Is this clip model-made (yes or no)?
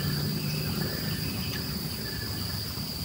no